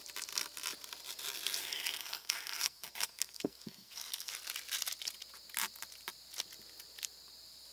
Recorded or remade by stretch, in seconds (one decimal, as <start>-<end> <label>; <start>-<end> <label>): 0.0-1.6 recorded; 1.6-4.3 remade; 4.3-7.7 recorded